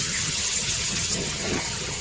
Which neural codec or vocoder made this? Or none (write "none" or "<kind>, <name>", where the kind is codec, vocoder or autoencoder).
vocoder, HiFi-GAN